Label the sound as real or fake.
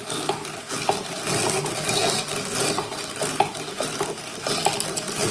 real